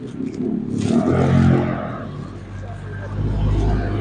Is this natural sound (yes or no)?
yes